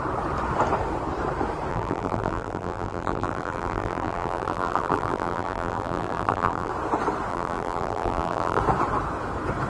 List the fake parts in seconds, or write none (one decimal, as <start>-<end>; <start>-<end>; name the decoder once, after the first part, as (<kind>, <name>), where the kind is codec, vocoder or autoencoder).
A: 1.7-6.7 (vocoder, BigVGAN v2); 7.3-8.6